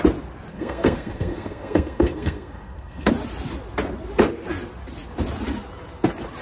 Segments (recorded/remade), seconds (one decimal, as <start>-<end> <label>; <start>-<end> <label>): 0.0-0.5 recorded; 0.5-3.1 remade; 3.1-6.4 recorded